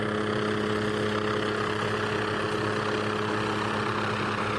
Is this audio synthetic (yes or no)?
no